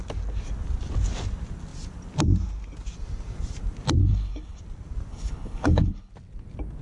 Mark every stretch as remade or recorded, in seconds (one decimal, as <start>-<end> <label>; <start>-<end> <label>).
0.0-4.0 recorded; 4.0-4.6 remade; 4.6-5.1 recorded; 5.1-6.1 remade; 6.1-6.8 recorded

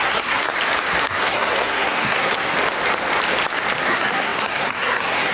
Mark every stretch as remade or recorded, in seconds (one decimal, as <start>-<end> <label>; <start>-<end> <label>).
0.0-0.5 remade; 0.5-1.0 recorded; 1.0-2.5 remade; 2.5-3.8 recorded; 3.8-5.3 remade

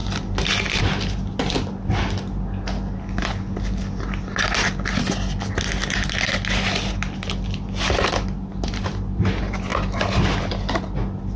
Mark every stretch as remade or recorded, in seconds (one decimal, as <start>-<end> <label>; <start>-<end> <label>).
0.0-11.4 recorded

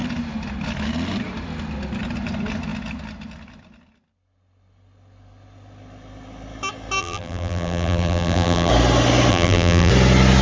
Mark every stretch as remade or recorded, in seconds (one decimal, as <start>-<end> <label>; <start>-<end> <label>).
0.0-7.0 recorded; 7.0-8.7 remade; 8.7-9.3 recorded; 9.3-9.9 remade; 9.9-10.4 recorded

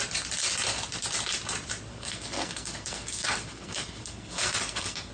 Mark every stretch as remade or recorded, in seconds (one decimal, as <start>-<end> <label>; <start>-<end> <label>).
0.0-1.9 recorded; 1.9-5.1 remade